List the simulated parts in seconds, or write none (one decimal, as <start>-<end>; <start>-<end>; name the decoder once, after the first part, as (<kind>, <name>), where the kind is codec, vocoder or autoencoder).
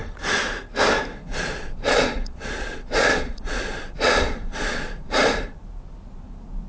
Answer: 1.3-5.1 (vocoder, Vocos)